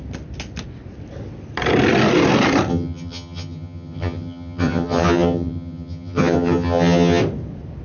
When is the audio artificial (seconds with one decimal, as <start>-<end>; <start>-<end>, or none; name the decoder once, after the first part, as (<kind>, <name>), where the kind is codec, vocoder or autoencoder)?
2.7-7.2 (vocoder, HiFi-GAN)